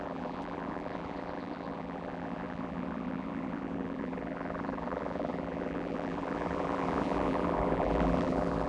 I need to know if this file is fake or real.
fake